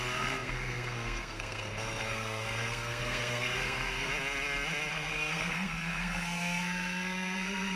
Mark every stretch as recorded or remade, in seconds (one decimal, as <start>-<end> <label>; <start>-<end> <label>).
0.0-4.1 remade; 4.1-4.9 recorded; 4.9-7.8 remade